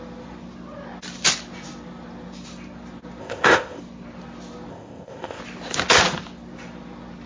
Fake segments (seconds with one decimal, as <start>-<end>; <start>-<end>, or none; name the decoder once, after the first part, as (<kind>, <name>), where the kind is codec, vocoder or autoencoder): 3.2-3.8 (codec, ZipCodec); 4.7-5.4